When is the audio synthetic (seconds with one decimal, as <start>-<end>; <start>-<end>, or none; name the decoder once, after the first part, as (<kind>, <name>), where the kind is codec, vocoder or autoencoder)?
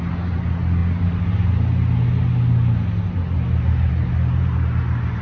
none